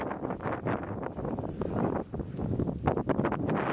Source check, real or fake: real